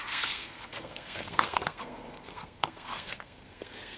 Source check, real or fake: fake